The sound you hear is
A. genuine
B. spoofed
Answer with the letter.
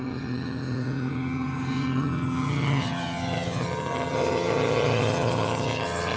B